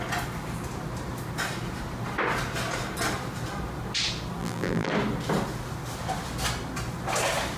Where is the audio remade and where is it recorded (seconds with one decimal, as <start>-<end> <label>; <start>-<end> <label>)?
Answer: 0.0-4.4 recorded; 4.4-4.9 remade; 4.9-7.6 recorded